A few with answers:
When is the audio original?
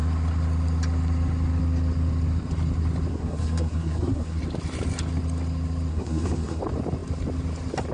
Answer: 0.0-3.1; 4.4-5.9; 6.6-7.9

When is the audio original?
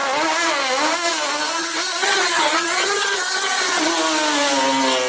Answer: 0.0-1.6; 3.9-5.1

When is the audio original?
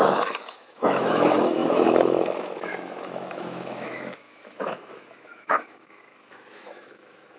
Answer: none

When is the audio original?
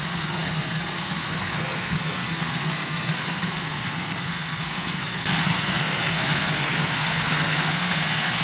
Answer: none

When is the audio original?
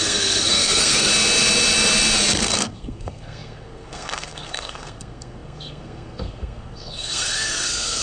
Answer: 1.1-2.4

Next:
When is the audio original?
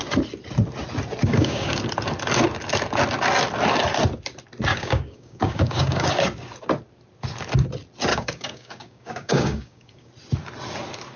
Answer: 0.0-1.2; 1.8-4.7; 6.1-8.1; 10.1-11.2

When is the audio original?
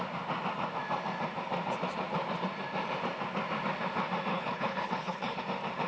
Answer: 0.0-4.3; 5.4-5.9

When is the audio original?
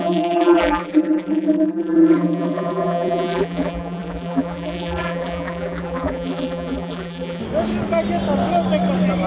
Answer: 7.4-9.3